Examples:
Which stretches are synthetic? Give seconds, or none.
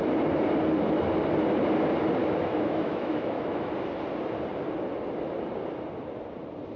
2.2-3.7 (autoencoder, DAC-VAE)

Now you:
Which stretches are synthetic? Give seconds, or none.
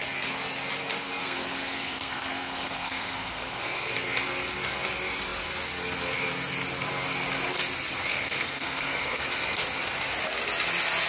1.2-3.9 (codec, SNAC); 8.1-9.2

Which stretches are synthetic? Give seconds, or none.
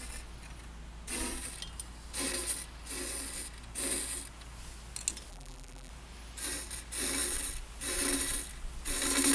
5.3-5.9 (vocoder, BigVGAN v2)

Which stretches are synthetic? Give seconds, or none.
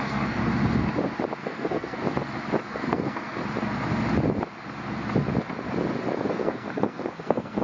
0.0-0.4 (codec, SNAC); 1.4-2.0; 2.6-3.4; 6.3-7.6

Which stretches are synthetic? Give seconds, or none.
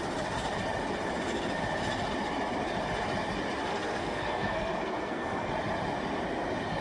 3.7-5.5 (codec, SNAC)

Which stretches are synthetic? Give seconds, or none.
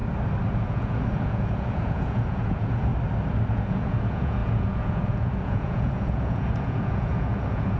0.5-2.9 (vocoder, Vocos); 3.5-7.8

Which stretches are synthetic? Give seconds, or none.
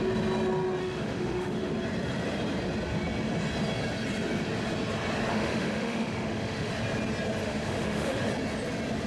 0.8-1.7 (autoencoder, DAC-VAE); 5.3-6.7; 7.4-8.3